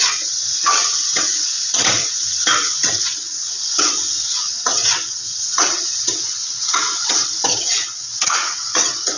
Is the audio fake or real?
fake